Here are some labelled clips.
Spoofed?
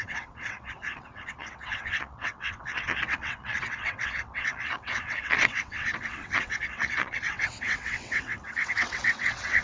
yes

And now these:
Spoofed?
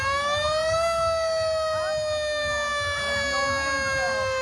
no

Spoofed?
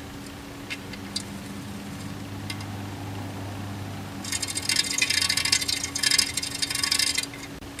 no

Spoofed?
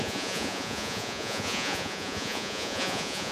yes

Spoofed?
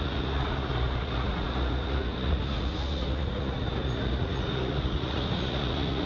yes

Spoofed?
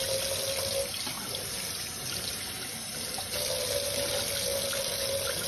no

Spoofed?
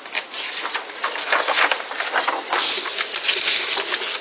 yes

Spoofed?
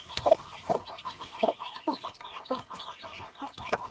yes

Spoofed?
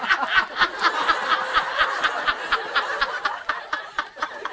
no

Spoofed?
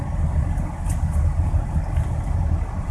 no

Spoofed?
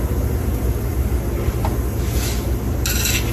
no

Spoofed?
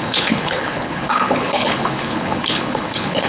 yes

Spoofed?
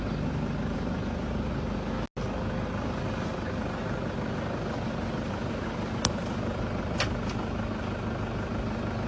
no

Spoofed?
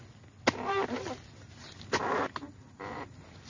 no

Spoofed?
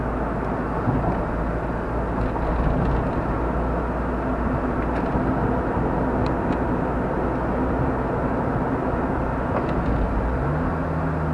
no